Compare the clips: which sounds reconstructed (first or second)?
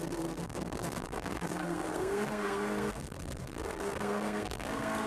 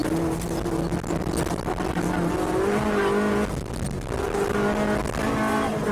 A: first